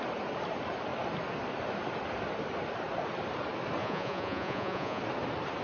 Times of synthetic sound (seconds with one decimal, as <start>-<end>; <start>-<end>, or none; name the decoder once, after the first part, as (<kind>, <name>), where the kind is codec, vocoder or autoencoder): 3.8-5.0 (vocoder, Vocos)